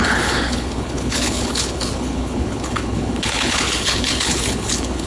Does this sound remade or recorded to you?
remade